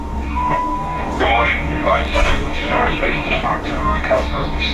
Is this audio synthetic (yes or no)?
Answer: yes